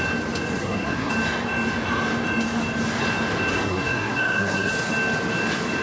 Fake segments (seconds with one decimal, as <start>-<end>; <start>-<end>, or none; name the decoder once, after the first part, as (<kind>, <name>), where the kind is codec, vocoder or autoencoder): 0.6-1.1 (codec, SNAC); 3.5-4.7